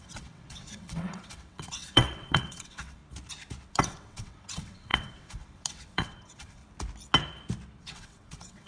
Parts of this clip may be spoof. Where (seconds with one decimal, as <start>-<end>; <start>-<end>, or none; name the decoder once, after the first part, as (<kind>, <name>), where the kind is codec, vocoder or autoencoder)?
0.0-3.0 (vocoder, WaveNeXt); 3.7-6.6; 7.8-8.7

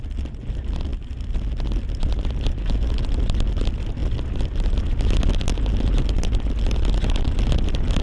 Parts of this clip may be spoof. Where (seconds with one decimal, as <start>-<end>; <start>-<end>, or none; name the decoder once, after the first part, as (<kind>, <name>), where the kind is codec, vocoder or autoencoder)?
none

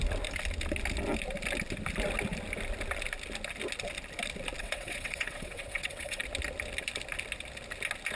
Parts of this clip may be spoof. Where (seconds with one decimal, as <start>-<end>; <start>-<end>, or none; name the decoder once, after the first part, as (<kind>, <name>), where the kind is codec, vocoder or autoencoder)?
4.6-6.2 (vocoder, WaveNeXt)

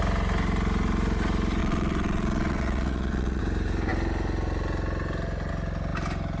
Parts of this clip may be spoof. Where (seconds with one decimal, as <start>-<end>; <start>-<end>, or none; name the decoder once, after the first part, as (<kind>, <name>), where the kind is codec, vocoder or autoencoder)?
1.6-3.4 (vocoder, WaveNeXt)

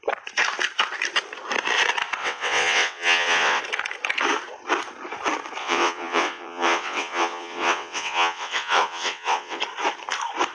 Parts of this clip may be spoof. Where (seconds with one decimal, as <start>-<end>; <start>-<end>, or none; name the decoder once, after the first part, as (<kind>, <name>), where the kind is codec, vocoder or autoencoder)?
2.2-3.6 (vocoder, WaveNeXt); 5.6-9.6

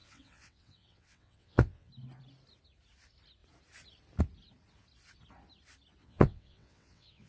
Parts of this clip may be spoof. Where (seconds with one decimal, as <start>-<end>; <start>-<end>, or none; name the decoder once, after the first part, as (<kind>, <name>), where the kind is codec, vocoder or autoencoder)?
0.0-1.9 (vocoder, WaveNeXt); 6.0-7.3